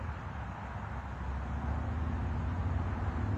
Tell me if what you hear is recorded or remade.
recorded